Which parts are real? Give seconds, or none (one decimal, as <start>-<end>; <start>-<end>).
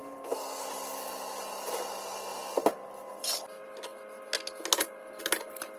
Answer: 0.0-5.8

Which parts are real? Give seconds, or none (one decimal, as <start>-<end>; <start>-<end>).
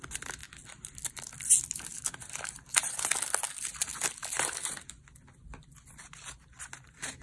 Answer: 0.0-1.9; 5.2-7.2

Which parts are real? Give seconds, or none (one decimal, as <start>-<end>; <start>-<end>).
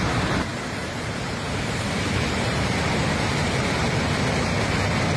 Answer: 0.0-0.5; 3.3-5.2